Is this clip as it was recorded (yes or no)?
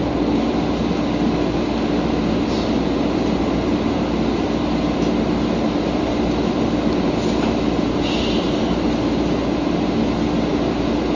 yes